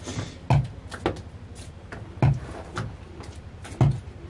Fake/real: real